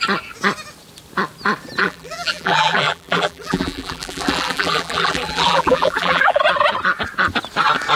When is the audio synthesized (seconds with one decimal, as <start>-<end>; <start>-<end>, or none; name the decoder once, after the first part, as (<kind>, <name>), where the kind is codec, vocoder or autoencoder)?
1.8-6.4 (vocoder, BigVGAN v2)